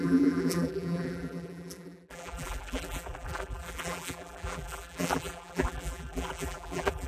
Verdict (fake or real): fake